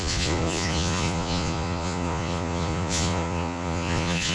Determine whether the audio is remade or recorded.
remade